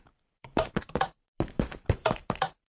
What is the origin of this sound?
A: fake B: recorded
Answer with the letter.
A